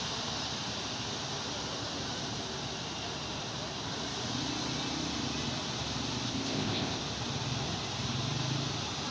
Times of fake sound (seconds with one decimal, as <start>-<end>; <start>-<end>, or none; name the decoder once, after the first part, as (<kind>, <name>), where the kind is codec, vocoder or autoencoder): 6.3-7.0 (codec, ZipCodec)